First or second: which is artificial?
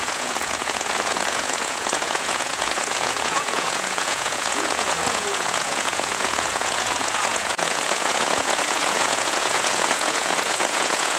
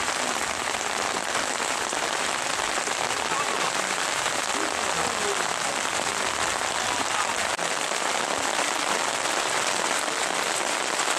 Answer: first